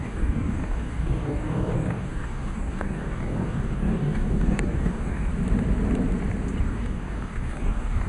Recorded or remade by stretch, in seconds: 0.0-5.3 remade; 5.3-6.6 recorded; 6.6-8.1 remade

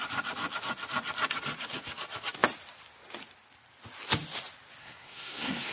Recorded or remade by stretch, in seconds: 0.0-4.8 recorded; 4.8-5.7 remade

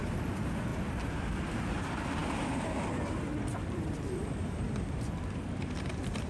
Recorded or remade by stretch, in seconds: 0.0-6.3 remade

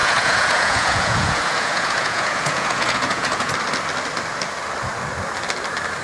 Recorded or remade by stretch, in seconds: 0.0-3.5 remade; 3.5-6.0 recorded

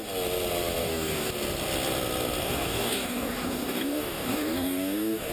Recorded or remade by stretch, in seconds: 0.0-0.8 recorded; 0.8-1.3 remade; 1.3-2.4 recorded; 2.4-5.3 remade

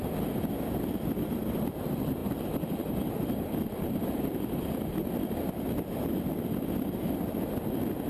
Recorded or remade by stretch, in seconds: 0.0-2.2 recorded; 2.2-5.1 remade; 5.1-8.1 recorded

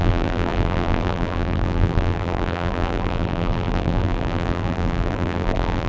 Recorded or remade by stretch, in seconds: 0.0-5.9 remade

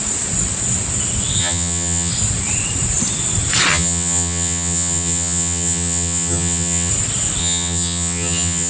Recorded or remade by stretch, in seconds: 0.0-1.4 recorded; 1.4-2.1 remade; 2.1-3.7 recorded; 3.7-6.9 remade; 6.9-7.4 recorded; 7.4-8.7 remade